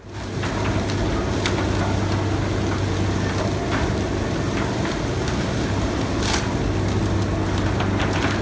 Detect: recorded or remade recorded